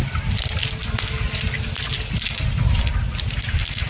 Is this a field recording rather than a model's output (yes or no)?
yes